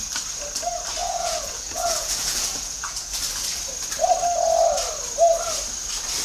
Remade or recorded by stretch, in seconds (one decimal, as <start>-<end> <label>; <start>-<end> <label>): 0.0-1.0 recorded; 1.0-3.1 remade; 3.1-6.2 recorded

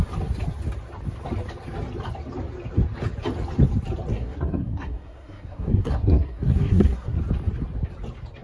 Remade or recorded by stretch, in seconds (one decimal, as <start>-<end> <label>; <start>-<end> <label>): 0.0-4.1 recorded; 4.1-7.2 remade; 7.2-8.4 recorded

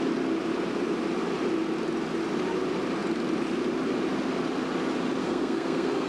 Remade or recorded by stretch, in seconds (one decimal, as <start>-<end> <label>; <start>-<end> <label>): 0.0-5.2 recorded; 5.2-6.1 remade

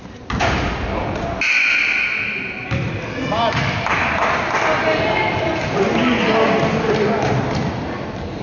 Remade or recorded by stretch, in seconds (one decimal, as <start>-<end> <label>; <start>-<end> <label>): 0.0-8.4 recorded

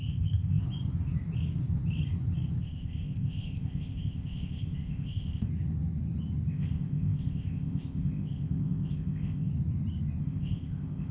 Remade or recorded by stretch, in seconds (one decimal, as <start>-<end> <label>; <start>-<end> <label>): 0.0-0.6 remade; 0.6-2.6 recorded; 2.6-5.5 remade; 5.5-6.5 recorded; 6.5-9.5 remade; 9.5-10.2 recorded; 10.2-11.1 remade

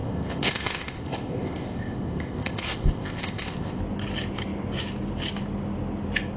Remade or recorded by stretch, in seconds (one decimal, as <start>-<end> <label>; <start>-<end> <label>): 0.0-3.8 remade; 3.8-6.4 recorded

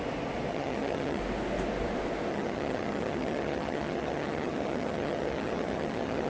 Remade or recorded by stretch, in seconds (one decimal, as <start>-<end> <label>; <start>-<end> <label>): 0.0-0.5 recorded; 0.5-1.2 remade; 1.2-2.3 recorded; 2.3-6.3 remade

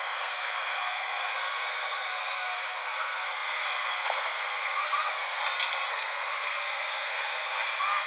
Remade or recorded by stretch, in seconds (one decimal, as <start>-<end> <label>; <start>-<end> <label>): 0.0-5.4 remade; 5.4-5.9 recorded; 5.9-8.1 remade